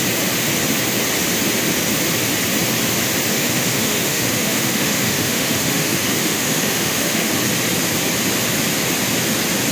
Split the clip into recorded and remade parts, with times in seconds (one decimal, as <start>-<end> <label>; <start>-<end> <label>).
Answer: 0.0-3.3 recorded; 3.3-7.3 remade; 7.3-9.7 recorded